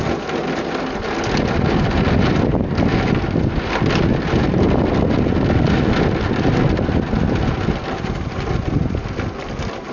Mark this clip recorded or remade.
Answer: recorded